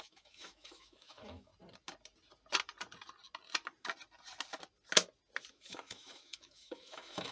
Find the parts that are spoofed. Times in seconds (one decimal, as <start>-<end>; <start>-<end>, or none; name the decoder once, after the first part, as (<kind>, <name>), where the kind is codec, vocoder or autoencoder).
0.0-1.5 (autoencoder, DAC-VAE); 5.5-7.3